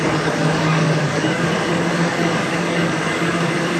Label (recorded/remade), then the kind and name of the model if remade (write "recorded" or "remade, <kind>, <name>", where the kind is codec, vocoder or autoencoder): remade, codec, DAC